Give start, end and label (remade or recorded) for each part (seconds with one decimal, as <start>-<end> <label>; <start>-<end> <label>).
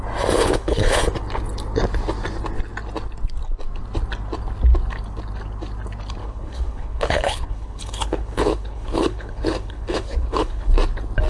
0.0-0.4 recorded; 0.4-1.0 remade; 1.0-6.2 recorded; 6.2-10.7 remade; 10.7-11.3 recorded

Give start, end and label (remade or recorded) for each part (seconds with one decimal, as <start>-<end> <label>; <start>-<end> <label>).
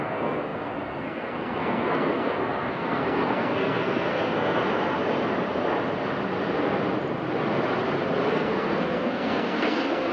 0.0-4.6 remade; 4.6-8.3 recorded; 8.3-10.1 remade